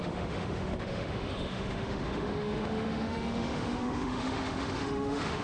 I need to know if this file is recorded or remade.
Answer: remade